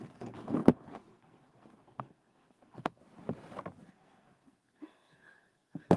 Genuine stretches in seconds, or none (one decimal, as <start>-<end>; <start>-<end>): 3.0-3.9